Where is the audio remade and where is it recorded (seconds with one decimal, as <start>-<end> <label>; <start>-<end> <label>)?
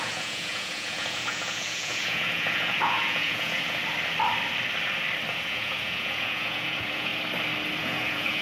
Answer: 0.0-3.8 remade; 3.8-5.3 recorded; 5.3-7.1 remade; 7.1-7.8 recorded; 7.8-8.4 remade